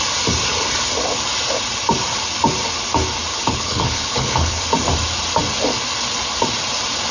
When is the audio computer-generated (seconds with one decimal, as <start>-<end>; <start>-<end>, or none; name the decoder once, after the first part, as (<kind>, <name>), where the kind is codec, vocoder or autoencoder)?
3.3-4.6 (codec, HILCodec)